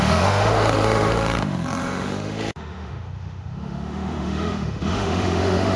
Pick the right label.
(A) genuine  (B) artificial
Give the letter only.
B